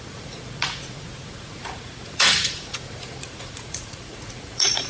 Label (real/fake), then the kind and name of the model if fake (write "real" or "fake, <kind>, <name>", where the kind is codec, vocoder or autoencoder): fake, vocoder, Vocos